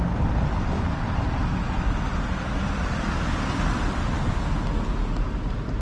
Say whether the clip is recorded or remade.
recorded